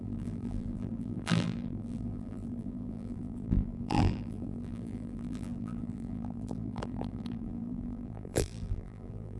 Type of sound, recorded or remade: remade